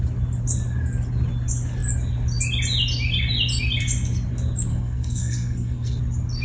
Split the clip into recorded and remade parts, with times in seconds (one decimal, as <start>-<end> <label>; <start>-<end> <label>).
0.0-4.7 recorded; 4.7-6.0 remade; 6.0-6.4 recorded